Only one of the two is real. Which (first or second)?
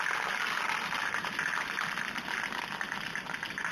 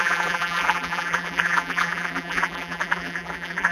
first